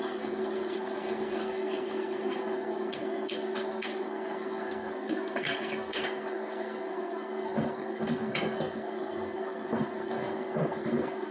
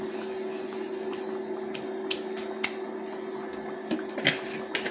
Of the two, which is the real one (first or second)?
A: second